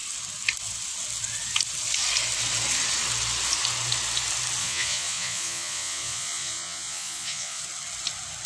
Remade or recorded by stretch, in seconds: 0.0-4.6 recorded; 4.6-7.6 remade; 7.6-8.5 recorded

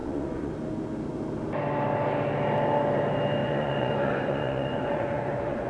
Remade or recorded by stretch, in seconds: 0.0-0.5 remade; 0.5-3.4 recorded; 3.4-5.7 remade

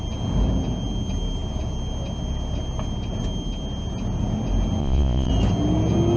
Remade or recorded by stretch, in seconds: 0.0-4.8 recorded; 4.8-5.3 remade; 5.3-6.2 recorded

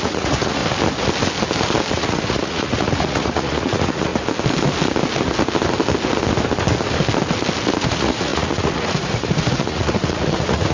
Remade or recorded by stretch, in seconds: 0.0-0.6 remade; 0.6-1.9 recorded; 1.9-4.1 remade; 4.1-7.8 recorded; 7.8-10.7 remade

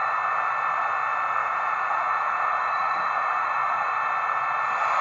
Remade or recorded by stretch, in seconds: 0.0-1.4 recorded; 1.4-3.9 remade; 3.9-5.0 recorded

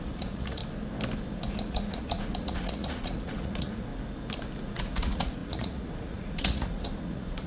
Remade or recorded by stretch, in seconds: 0.0-0.6 remade; 0.6-1.5 recorded; 1.5-3.9 remade; 3.9-4.7 recorded; 4.7-7.5 remade